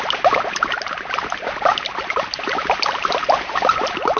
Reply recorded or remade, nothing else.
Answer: recorded